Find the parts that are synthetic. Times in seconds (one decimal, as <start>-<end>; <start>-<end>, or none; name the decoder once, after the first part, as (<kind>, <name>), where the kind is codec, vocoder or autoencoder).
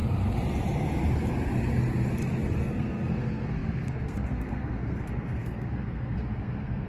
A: 2.6-6.9 (codec, SNAC)